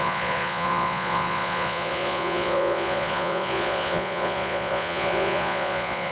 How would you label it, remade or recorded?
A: remade